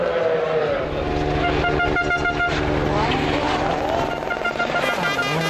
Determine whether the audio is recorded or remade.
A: recorded